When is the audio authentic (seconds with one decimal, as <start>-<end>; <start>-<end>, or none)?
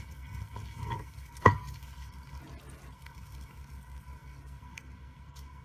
2.4-2.9